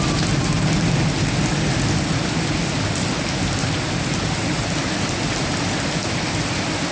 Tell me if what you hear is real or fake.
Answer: real